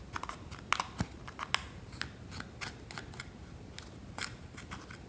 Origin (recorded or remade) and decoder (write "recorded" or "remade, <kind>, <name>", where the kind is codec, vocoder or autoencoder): recorded